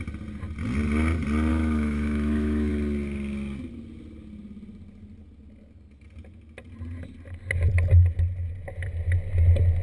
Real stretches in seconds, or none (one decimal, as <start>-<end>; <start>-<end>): 0.0-1.5; 2.7-9.8